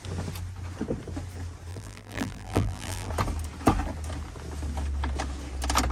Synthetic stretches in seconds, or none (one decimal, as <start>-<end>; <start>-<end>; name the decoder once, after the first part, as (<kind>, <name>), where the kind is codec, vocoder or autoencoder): 1.7-3.1 (vocoder, BigVGAN v2)